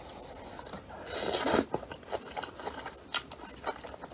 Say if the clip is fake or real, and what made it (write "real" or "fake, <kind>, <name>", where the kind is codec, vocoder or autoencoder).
real